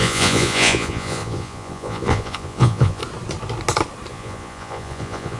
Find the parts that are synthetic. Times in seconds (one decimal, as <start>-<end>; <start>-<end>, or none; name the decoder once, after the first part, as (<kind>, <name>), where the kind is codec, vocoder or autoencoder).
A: 0.0-3.0 (vocoder, Vocos); 4.1-5.4